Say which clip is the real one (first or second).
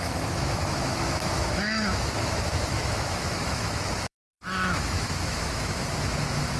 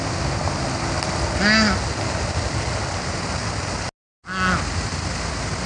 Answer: second